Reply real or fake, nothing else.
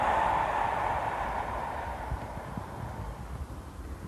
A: real